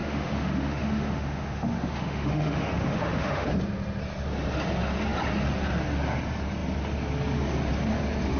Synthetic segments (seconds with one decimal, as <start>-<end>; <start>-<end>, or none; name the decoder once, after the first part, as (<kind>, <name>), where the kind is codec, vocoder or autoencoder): 0.0-3.5 (autoencoder, DAC-VAE)